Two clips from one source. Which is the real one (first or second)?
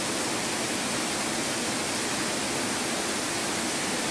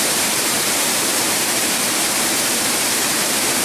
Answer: first